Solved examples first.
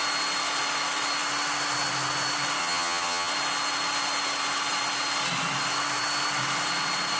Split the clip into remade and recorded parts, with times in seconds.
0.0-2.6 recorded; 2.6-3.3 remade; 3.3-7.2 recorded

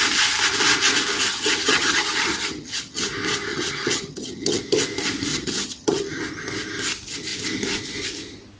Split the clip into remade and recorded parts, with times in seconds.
0.0-1.3 recorded; 1.3-3.1 remade; 3.1-3.5 recorded; 3.5-4.6 remade; 4.6-5.3 recorded; 5.3-6.2 remade; 6.2-8.6 recorded

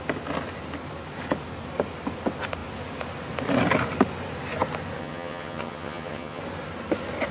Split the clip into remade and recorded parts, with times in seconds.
0.0-5.0 recorded; 5.0-6.4 remade; 6.4-7.3 recorded